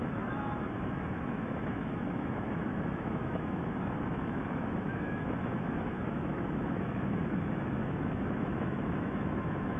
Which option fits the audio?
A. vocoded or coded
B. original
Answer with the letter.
A